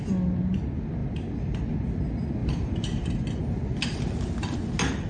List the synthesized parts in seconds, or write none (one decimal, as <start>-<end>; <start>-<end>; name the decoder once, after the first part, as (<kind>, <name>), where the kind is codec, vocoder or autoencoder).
1.0-1.6 (vocoder, BigVGAN v2); 2.4-3.4